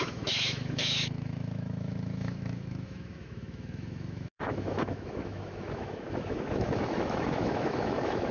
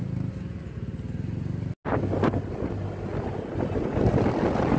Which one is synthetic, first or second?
first